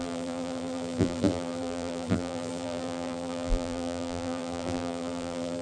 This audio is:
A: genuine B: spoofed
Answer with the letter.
B